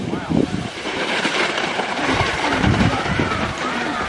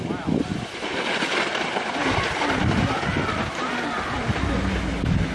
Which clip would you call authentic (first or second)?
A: second